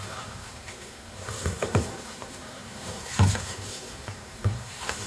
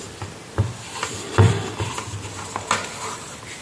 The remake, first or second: first